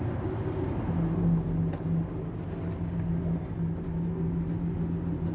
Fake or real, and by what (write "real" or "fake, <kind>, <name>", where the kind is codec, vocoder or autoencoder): real